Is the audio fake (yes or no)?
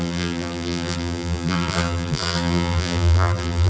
yes